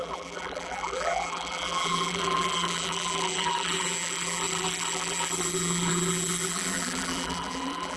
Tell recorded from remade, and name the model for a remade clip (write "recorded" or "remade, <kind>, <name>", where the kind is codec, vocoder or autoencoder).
remade, vocoder, BigVGAN v2